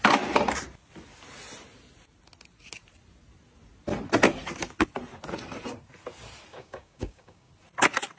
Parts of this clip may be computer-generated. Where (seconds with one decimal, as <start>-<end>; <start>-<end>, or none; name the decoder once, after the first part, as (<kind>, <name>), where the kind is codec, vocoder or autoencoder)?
6.5-7.5 (codec, DAC)